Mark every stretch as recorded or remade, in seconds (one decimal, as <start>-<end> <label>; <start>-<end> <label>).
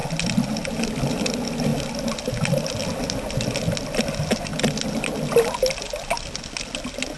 0.0-7.2 recorded